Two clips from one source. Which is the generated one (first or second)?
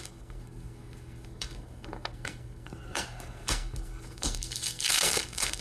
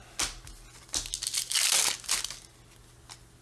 first